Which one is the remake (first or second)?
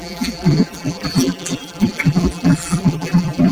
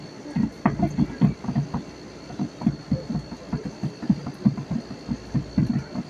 first